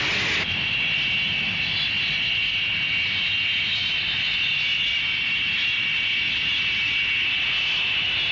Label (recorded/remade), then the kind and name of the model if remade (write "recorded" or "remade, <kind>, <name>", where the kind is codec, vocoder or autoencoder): recorded